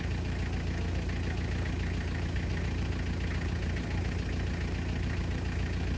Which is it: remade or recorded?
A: recorded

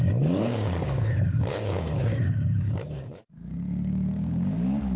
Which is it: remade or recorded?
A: remade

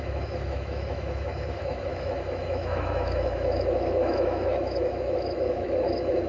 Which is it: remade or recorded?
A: remade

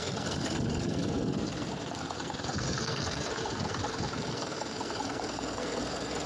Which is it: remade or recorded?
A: remade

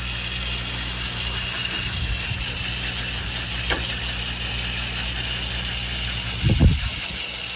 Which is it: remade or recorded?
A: recorded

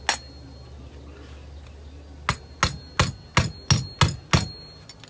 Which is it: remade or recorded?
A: recorded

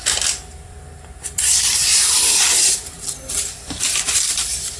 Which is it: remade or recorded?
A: remade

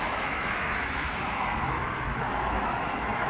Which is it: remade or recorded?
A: remade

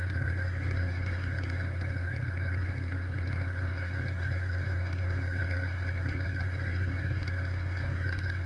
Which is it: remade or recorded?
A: remade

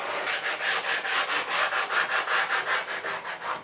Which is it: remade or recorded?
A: recorded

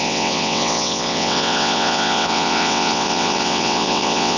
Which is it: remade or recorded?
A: remade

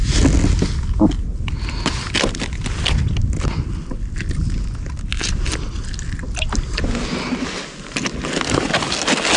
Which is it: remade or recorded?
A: recorded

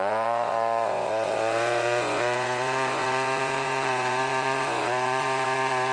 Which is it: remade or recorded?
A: remade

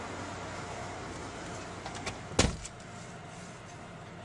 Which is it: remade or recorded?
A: recorded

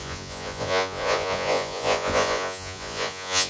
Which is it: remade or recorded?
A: remade